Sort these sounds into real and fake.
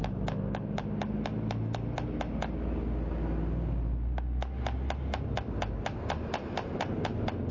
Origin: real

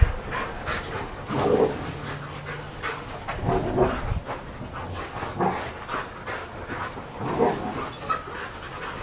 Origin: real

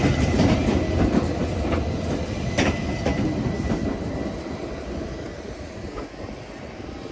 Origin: real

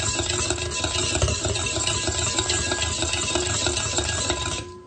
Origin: real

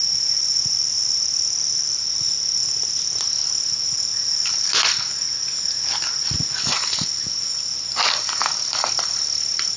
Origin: real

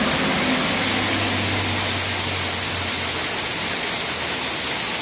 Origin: real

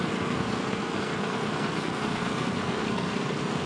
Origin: fake